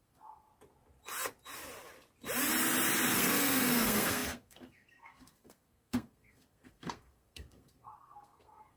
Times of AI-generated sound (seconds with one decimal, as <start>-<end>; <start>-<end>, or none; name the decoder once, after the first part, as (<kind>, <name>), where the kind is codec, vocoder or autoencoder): 0.0-0.5 (codec, SNAC); 3.1-8.8